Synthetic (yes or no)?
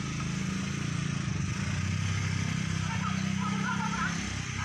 no